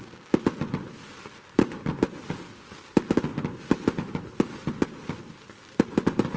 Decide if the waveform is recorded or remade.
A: recorded